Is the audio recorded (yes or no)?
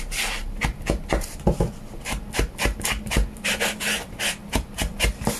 yes